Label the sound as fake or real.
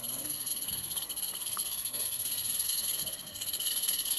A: fake